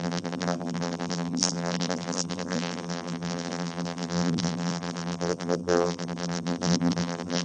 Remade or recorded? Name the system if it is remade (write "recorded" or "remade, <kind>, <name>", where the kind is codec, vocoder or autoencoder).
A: remade, vocoder, BigVGAN v2